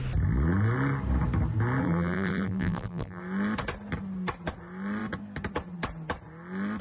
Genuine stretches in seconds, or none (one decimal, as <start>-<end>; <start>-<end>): 0.0-1.8; 3.2-6.8